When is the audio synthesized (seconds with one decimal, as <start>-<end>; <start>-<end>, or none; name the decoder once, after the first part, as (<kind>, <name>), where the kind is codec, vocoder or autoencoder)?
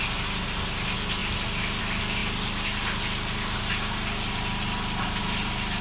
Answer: none